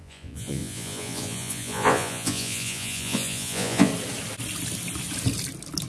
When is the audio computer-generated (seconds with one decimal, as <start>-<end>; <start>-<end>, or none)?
0.0-3.9